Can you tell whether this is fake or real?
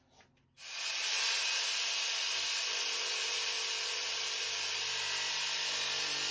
real